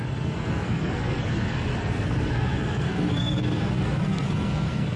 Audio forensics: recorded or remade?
remade